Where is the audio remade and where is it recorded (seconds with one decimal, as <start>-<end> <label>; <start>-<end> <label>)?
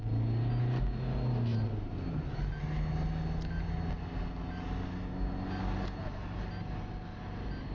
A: 0.0-7.7 recorded